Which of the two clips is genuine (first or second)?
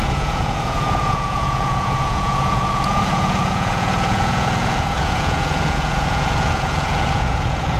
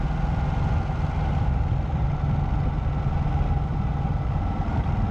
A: second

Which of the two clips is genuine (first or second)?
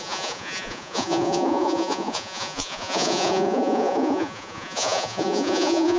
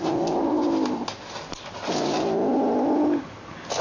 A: second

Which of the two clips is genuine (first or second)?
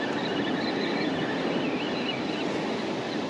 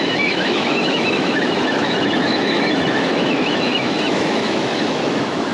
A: first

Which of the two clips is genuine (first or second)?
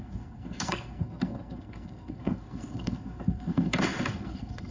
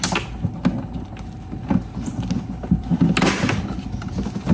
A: second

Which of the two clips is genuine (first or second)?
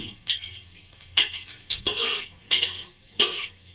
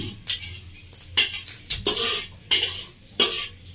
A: second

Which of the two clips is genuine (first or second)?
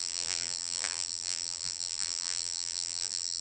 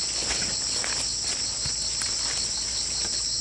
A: second